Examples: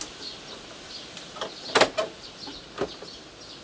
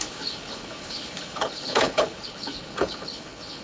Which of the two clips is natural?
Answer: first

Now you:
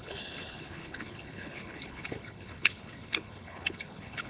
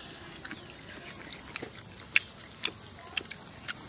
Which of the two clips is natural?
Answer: second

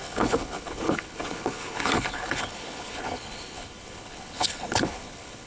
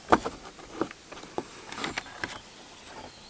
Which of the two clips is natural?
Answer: second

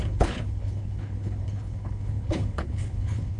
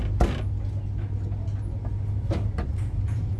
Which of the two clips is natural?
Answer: second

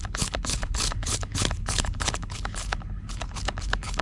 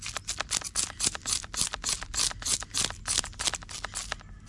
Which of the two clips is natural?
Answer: second